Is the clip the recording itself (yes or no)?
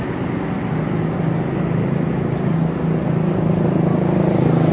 yes